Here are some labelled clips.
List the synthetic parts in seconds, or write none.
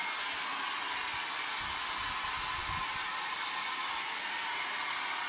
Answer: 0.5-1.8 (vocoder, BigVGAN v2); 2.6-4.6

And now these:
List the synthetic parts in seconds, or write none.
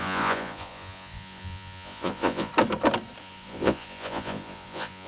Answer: 0.0-2.5 (vocoder, Vocos); 3.2-5.1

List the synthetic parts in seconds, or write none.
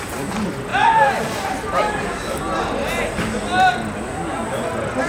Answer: 0.7-2.6 (vocoder, BigVGAN v2)